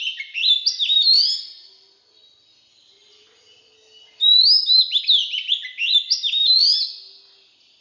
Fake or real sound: real